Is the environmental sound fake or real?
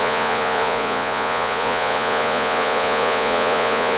fake